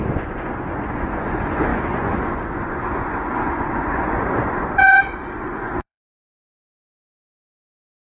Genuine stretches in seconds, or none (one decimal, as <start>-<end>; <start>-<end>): none

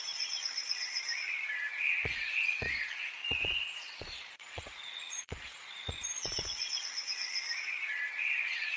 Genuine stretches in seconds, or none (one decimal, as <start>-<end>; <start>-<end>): none

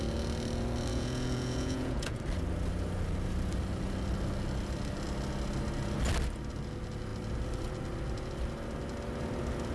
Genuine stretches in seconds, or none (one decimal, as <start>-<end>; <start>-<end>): 0.0-0.9; 2.2-9.7

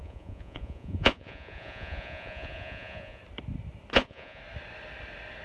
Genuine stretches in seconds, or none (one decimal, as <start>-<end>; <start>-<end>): 3.2-3.9; 4.4-5.4